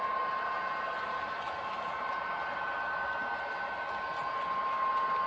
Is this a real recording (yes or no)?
yes